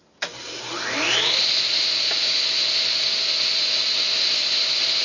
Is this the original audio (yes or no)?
yes